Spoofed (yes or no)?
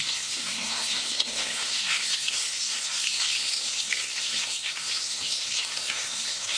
yes